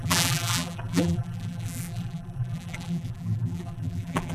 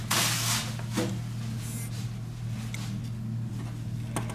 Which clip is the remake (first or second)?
first